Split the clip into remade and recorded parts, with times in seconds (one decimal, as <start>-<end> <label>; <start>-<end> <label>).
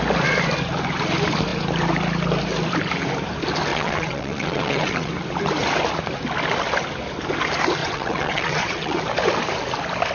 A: 0.0-3.7 recorded; 3.7-5.1 remade; 5.1-7.8 recorded; 7.8-9.0 remade; 9.0-10.1 recorded